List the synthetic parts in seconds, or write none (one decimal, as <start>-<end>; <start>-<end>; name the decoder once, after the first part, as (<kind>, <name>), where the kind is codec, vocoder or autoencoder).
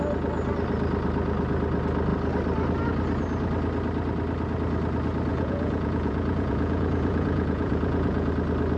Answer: 5.3-8.3 (vocoder, Vocos)